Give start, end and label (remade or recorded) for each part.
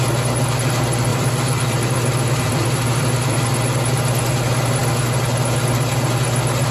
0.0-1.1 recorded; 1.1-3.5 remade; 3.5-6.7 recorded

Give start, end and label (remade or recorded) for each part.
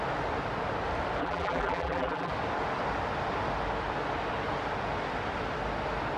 0.0-1.2 recorded; 1.2-2.3 remade; 2.3-6.2 recorded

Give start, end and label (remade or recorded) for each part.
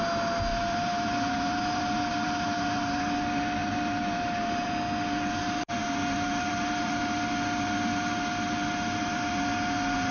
0.0-0.5 recorded; 0.5-3.0 remade; 3.0-3.6 recorded; 3.6-4.7 remade; 4.7-5.8 recorded; 5.8-7.0 remade; 7.0-10.1 recorded